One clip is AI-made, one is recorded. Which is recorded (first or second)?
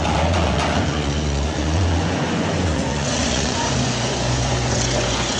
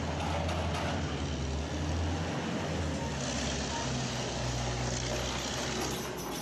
second